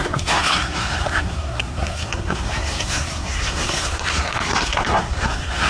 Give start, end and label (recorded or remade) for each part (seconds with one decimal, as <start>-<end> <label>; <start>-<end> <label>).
0.0-5.7 remade